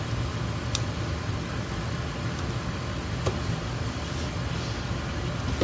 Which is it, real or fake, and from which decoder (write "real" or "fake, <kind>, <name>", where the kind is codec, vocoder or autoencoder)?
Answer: real